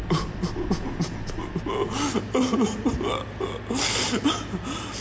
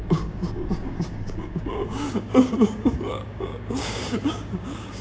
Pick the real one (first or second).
first